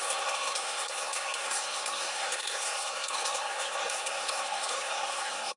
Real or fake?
fake